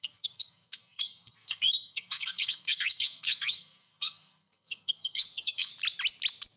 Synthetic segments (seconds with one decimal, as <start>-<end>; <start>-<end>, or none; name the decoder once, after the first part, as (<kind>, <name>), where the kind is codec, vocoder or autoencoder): 0.0-5.7 (codec, SNAC)